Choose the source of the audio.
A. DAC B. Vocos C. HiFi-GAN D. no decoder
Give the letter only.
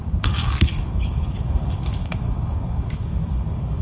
A